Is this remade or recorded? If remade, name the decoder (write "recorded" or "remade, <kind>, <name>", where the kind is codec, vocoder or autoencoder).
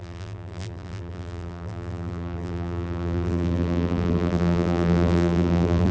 remade, vocoder, BigVGAN v2